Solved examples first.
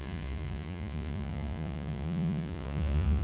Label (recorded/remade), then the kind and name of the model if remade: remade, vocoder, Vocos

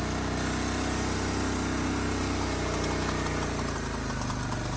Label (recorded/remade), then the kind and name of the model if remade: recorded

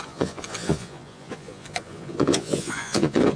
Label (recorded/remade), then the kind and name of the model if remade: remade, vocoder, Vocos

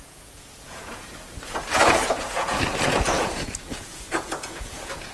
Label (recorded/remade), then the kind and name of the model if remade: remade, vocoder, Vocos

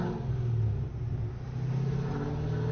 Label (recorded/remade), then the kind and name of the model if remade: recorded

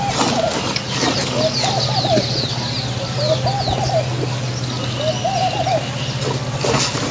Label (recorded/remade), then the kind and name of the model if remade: recorded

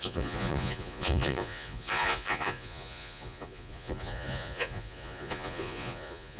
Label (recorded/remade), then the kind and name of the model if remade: remade, vocoder, Vocos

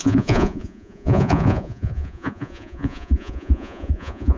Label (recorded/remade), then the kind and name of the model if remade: remade, vocoder, Vocos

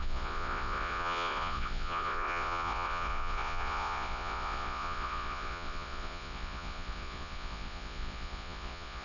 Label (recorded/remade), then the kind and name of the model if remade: remade, vocoder, Vocos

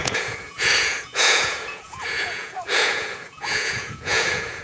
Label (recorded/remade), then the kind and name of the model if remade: remade, vocoder, Vocos